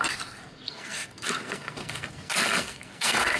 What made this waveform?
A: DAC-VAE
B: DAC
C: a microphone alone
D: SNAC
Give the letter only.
D